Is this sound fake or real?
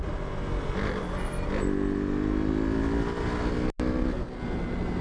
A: real